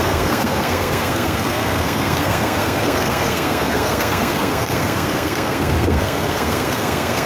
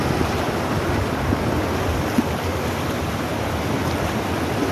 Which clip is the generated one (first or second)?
first